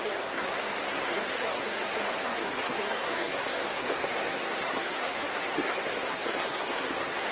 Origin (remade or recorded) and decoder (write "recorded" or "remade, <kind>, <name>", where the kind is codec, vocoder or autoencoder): remade, codec, SNAC